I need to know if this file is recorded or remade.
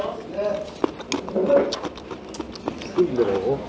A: recorded